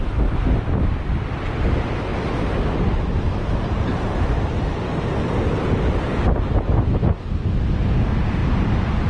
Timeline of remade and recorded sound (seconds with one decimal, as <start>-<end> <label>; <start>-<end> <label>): 0.0-2.1 recorded; 2.1-5.2 remade; 5.2-9.1 recorded